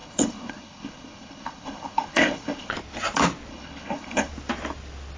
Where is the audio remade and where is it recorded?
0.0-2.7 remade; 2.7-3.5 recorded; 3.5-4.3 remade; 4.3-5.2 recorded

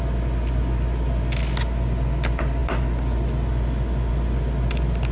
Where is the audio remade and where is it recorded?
0.0-5.1 recorded